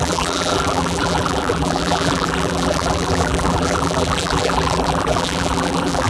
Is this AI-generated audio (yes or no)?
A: yes